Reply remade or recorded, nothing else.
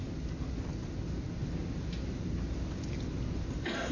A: recorded